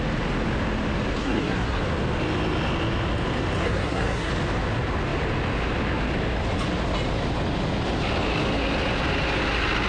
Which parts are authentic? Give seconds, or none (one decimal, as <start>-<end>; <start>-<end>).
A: 0.0-1.2; 1.8-3.6; 4.3-9.9